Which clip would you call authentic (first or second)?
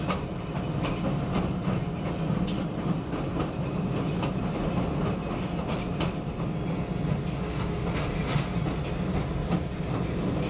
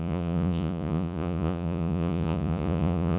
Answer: first